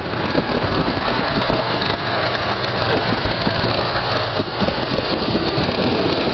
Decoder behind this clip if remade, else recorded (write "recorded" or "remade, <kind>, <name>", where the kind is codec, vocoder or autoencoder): remade, codec, SNAC